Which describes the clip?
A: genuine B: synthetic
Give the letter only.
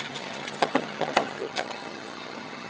B